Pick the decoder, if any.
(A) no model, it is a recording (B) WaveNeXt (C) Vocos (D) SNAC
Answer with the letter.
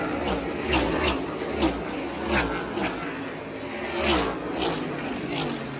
A